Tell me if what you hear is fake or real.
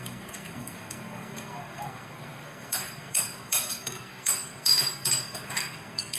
fake